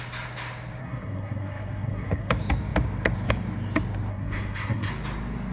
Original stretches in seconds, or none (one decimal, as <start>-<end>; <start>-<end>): 0.0-0.8; 2.3-4.1; 4.9-5.5